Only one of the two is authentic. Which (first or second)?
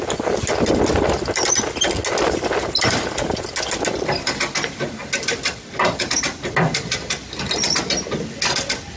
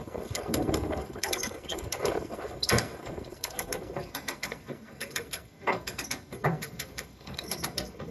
first